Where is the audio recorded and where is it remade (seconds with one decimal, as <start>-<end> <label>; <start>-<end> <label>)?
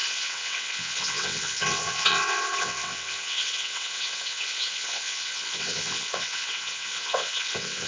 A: 0.0-7.9 remade